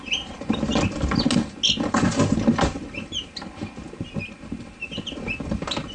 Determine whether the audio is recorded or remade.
recorded